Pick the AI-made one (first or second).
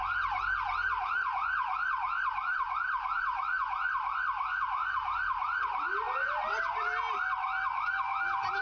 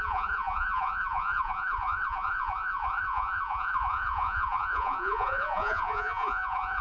second